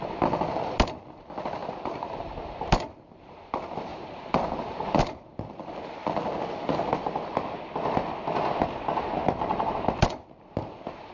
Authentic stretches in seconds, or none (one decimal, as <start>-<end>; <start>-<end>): 0.0-1.6; 3.2-3.9; 5.0-11.1